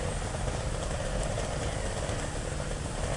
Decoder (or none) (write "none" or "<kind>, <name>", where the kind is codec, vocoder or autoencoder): none